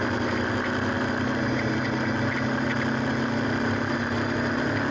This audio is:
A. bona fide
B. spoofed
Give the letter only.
A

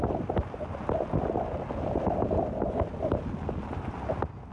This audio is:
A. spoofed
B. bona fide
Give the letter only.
B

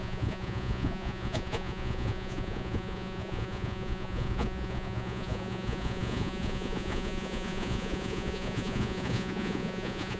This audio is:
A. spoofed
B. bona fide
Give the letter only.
A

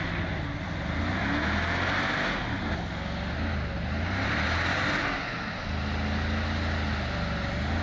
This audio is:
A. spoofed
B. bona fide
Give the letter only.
B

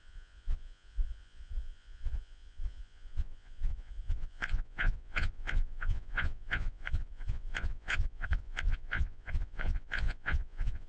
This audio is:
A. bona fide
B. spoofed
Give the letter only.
B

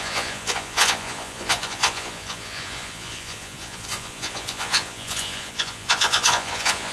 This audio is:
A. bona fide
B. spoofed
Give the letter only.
B